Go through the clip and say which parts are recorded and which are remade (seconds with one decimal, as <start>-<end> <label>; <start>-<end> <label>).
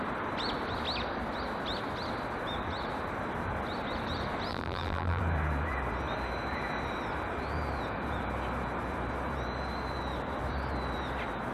0.0-4.5 recorded; 4.5-5.2 remade; 5.2-11.5 recorded